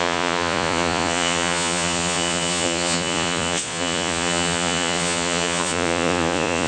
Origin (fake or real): fake